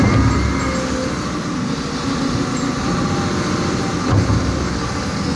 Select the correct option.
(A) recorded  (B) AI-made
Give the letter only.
A